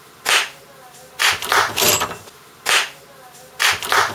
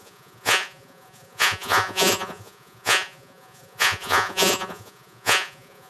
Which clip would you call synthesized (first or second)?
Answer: second